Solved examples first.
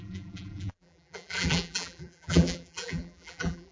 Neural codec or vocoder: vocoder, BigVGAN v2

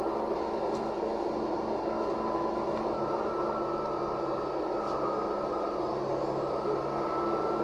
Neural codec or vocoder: none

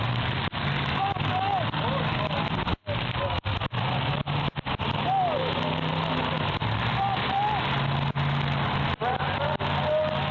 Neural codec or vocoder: none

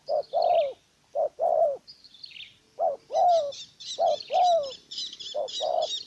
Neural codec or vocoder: none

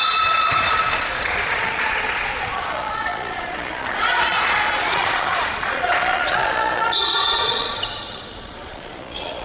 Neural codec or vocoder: vocoder, Vocos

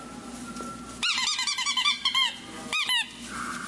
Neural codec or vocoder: none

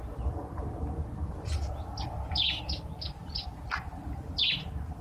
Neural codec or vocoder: none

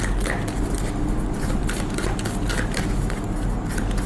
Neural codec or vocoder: none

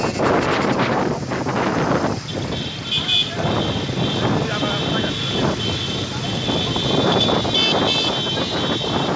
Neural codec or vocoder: none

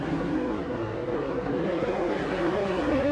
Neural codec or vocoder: codec, SNAC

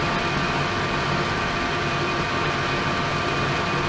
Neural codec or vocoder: none